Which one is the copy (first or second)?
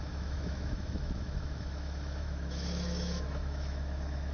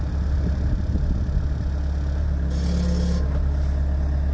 first